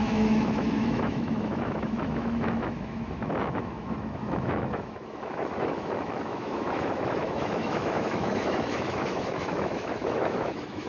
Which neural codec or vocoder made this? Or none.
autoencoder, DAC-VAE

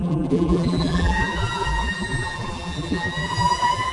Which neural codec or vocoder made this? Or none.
vocoder, BigVGAN v2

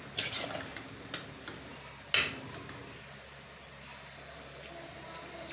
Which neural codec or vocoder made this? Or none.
none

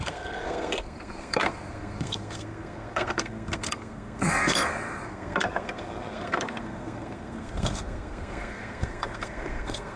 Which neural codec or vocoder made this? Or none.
codec, SNAC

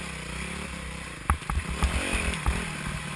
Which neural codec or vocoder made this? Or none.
none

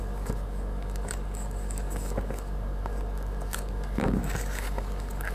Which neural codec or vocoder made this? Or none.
codec, DAC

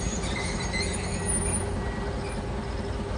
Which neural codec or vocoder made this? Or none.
none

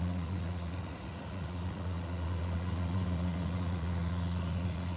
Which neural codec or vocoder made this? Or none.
vocoder, Vocos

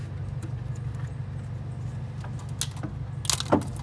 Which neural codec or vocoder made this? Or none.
none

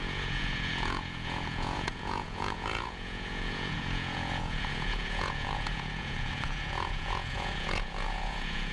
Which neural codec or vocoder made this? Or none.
vocoder, Vocos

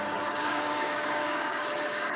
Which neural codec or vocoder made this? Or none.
codec, DAC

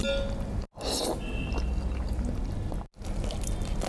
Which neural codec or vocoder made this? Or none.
none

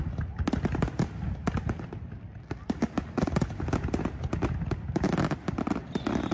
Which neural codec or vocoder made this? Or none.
none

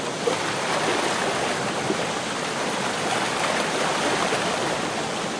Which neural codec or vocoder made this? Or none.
none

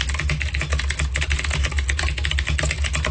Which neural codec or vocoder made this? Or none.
none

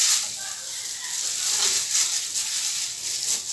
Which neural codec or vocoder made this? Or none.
none